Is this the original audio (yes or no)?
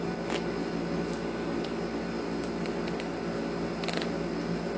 yes